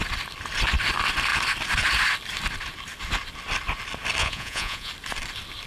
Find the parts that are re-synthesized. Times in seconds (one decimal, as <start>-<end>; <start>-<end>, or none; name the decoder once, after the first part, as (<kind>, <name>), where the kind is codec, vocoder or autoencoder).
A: 4.2-4.9 (vocoder, Vocos)